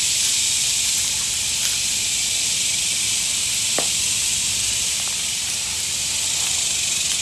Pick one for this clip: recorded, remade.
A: recorded